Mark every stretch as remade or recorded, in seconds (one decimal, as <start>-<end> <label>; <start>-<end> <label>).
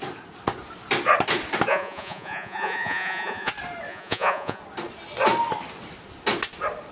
0.0-1.7 recorded; 1.7-3.5 remade; 3.5-3.9 recorded; 3.9-4.6 remade; 4.6-6.9 recorded